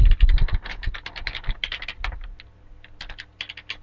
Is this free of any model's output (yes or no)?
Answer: yes